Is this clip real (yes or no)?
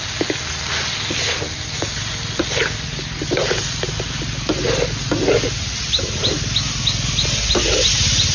yes